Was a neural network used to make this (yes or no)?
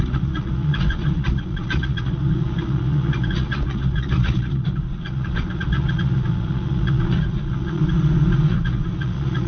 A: yes